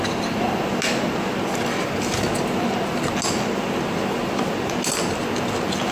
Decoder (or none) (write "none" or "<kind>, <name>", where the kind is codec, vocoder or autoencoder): none